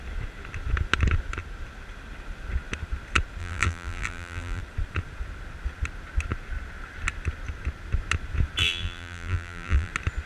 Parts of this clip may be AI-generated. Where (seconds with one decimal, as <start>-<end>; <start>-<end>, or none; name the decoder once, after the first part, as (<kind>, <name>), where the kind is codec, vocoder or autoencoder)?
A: 3.4-4.6 (vocoder, BigVGAN v2); 8.6-9.9